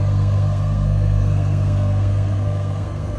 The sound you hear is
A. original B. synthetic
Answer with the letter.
B